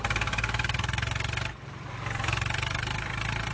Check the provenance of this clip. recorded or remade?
remade